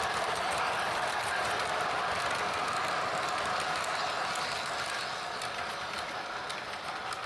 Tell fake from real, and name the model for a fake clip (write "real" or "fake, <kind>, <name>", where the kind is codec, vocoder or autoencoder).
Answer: real